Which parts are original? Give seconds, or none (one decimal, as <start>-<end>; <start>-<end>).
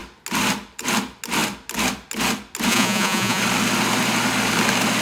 0.0-2.7; 3.4-5.0